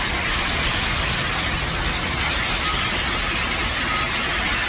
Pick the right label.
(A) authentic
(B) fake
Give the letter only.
A